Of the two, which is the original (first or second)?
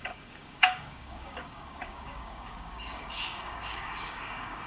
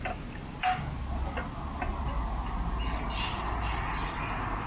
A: second